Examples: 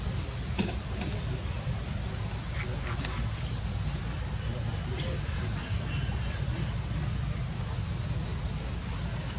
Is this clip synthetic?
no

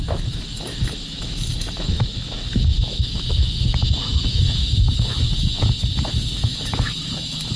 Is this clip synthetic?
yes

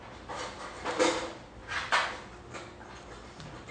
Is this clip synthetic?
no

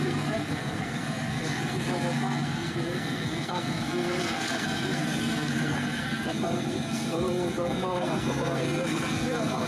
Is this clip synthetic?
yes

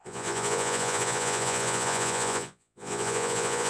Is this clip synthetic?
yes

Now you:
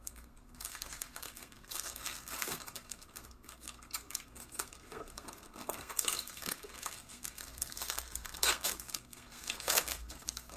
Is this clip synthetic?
yes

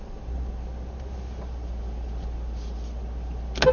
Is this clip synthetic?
no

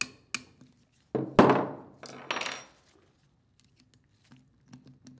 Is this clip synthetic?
no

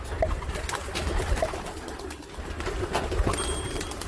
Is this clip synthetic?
yes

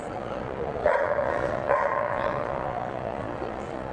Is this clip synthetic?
yes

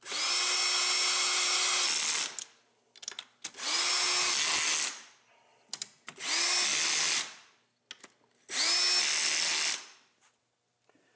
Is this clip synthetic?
no